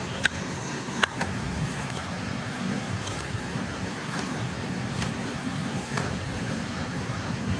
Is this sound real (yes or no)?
no